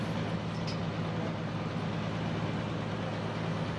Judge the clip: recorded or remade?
recorded